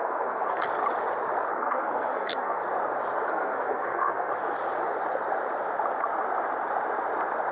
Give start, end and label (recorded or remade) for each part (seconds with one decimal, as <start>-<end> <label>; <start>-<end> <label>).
0.0-0.7 remade; 0.7-1.5 recorded; 1.5-2.6 remade; 2.6-3.3 recorded; 3.3-4.3 remade; 4.3-7.5 recorded